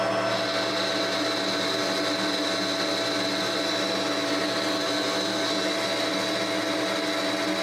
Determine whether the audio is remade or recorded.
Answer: recorded